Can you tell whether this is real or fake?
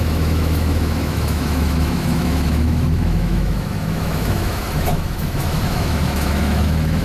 fake